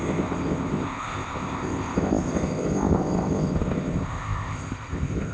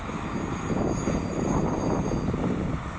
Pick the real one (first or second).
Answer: second